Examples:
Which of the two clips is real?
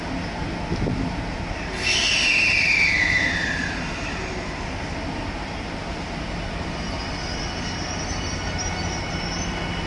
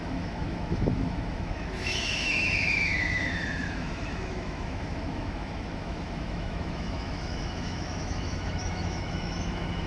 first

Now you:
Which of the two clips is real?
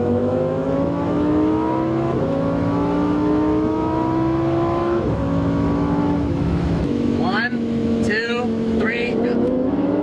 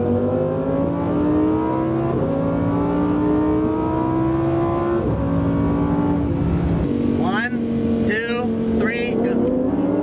second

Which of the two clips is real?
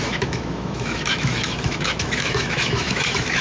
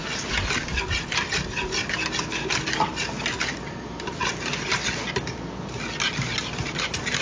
second